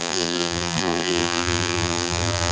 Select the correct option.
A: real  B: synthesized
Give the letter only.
B